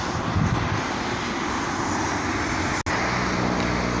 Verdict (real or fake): real